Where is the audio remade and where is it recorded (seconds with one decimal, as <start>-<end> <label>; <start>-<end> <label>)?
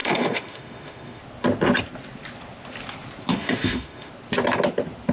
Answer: 0.0-1.2 remade; 1.2-3.3 recorded; 3.3-4.1 remade; 4.1-5.1 recorded